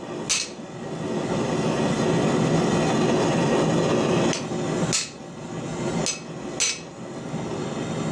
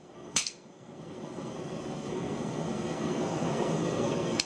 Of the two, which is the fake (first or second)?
second